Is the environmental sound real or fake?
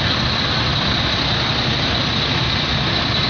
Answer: real